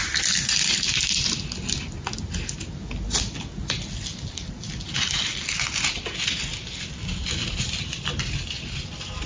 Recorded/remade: recorded